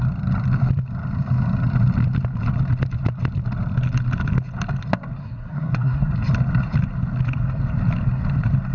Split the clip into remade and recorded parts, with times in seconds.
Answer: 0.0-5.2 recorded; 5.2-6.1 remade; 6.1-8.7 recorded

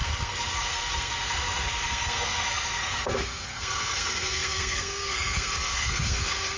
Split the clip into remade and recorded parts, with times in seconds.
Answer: 0.0-6.6 remade